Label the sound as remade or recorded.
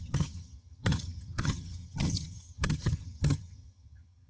remade